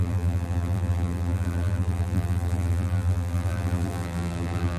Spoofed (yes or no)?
yes